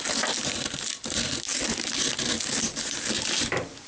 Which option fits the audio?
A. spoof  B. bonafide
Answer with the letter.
B